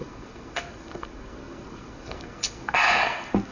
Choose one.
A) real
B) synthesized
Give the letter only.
B